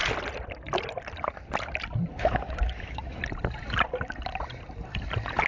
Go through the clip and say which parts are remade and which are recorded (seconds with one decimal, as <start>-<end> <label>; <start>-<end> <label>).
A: 0.0-2.2 recorded; 2.2-3.2 remade; 3.2-5.5 recorded